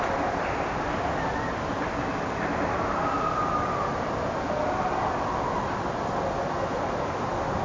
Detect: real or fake real